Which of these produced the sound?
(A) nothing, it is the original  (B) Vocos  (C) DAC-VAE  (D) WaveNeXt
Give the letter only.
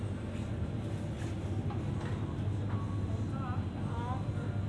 A